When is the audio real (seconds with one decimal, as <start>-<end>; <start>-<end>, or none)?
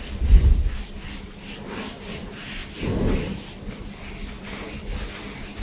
0.6-2.0; 2.6-3.7